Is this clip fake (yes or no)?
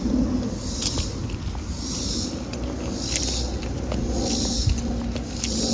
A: no